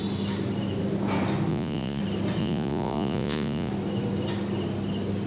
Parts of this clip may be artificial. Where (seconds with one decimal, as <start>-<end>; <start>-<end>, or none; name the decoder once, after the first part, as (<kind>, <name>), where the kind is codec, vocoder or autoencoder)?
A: 1.5-2.0 (vocoder, Vocos); 2.4-3.7